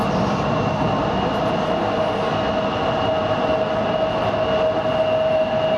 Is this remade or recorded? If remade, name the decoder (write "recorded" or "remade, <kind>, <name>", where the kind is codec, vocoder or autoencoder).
recorded